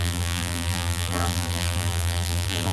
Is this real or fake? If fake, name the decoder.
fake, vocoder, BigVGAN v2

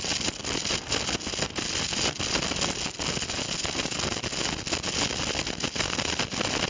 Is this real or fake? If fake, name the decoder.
real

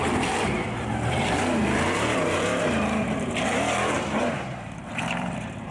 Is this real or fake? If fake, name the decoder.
fake, vocoder, BigVGAN v2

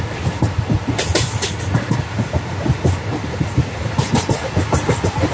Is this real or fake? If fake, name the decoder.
real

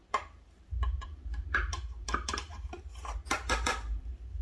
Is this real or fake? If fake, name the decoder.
fake, vocoder, BigVGAN v2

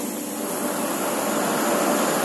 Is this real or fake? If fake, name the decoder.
real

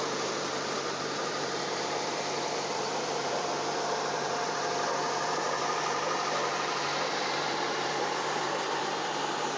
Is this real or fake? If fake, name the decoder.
fake, vocoder, BigVGAN v2